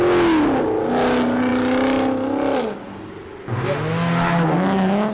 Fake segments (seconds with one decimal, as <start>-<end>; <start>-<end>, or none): none